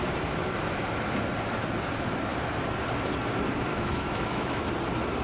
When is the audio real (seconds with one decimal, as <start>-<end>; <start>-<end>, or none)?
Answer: 0.0-3.7; 4.6-5.2